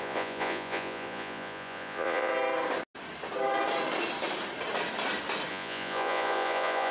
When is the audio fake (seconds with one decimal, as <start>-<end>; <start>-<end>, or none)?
0.0-2.3; 5.5-6.9